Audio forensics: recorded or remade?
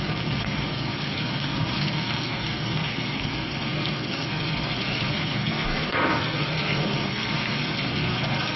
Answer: remade